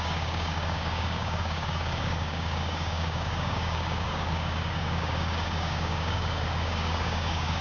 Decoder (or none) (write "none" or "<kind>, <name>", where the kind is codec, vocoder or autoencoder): codec, DAC